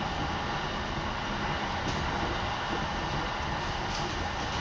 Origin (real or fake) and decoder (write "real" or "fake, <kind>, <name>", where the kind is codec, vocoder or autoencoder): real